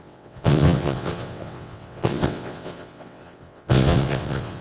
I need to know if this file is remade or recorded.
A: remade